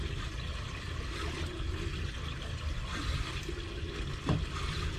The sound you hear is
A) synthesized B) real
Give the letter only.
B